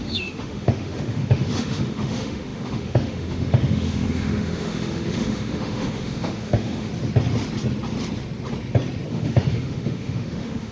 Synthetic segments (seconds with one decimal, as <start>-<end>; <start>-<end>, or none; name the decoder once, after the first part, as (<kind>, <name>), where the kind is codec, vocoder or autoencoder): 0.0-6.9 (autoencoder, DAC-VAE); 9.1-10.7